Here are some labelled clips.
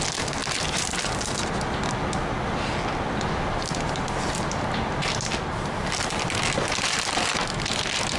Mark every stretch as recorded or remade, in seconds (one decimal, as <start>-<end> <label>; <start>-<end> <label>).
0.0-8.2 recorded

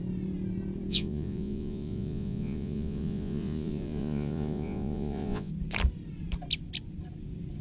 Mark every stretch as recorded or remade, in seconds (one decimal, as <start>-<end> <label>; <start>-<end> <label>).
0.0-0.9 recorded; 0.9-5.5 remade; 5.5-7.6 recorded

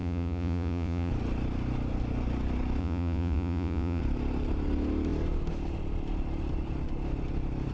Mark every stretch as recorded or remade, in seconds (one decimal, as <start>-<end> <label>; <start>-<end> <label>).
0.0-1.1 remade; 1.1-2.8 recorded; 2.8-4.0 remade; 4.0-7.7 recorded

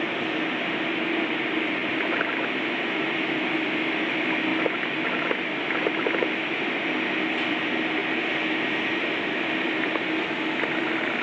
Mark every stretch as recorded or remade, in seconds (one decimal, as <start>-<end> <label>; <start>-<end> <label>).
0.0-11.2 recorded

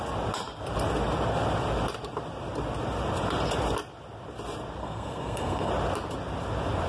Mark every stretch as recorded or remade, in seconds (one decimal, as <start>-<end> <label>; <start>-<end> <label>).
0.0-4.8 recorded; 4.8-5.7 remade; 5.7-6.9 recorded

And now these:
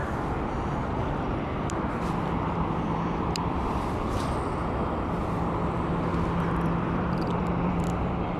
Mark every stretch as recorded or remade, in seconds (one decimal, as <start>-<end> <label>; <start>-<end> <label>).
0.0-5.2 remade; 5.2-6.4 recorded; 6.4-8.4 remade

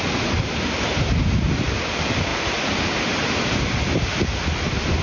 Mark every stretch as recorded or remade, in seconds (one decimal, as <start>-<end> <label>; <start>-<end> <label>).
0.0-5.0 recorded